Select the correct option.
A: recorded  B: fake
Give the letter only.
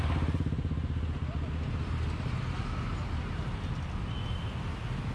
A